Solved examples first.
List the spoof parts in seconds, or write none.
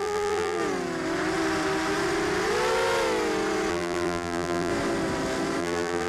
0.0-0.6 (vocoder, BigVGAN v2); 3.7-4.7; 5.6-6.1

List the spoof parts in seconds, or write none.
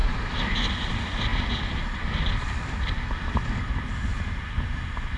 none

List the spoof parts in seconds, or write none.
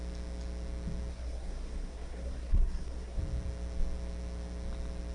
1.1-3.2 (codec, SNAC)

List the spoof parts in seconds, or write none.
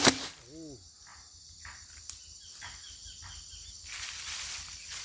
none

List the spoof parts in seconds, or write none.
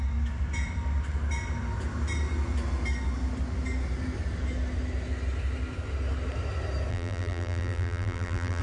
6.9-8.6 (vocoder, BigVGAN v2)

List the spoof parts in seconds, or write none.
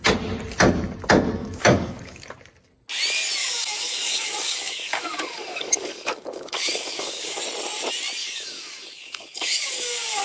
1.4-2.3 (codec, DAC); 3.4-7.4; 8.2-10.2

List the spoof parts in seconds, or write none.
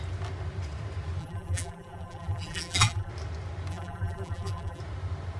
1.2-3.1 (vocoder, BigVGAN v2); 3.7-4.8